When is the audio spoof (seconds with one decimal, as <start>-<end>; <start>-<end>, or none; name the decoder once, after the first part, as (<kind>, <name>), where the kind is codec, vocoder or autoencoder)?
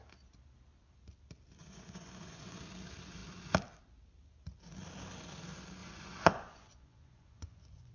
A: 1.6-2.6 (vocoder, Vocos); 5.8-7.9